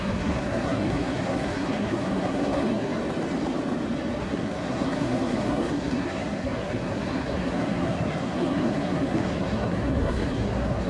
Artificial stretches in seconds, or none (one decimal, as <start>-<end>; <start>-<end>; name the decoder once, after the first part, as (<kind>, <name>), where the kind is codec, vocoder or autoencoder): 0.0-3.0 (codec, SNAC); 4.2-10.9